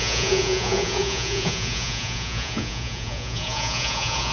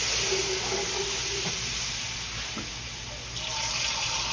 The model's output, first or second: first